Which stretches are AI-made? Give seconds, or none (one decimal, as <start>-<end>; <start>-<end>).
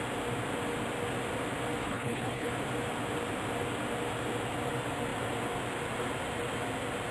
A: 1.8-2.5